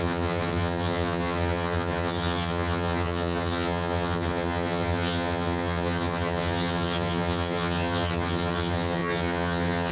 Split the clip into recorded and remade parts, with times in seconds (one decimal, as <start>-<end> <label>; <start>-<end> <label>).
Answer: 0.0-9.9 remade